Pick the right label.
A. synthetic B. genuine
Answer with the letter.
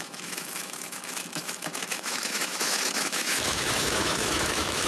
A